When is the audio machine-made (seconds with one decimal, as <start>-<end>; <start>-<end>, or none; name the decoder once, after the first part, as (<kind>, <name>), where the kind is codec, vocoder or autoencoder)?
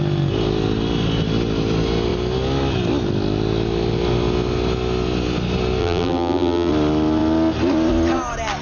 5.8-6.7 (vocoder, BigVGAN v2)